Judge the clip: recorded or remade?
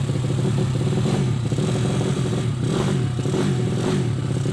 remade